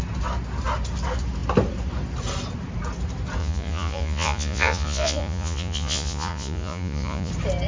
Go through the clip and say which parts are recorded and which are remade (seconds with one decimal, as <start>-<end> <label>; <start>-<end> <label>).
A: 0.0-3.4 recorded; 3.4-7.3 remade; 7.3-7.7 recorded